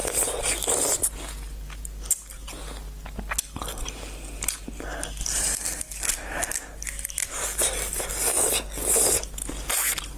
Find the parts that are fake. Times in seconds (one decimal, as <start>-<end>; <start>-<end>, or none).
none